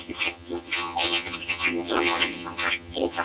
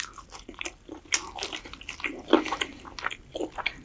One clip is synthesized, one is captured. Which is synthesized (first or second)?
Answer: first